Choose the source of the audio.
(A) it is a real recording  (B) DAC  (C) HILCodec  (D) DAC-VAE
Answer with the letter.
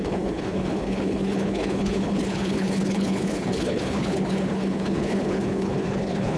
C